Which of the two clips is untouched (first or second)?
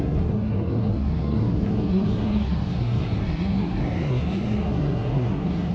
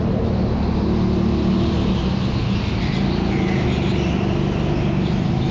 second